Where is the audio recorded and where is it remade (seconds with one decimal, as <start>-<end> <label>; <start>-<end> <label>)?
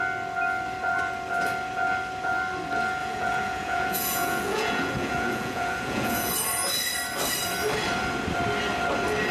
0.0-3.0 recorded; 3.0-6.3 remade; 6.3-9.3 recorded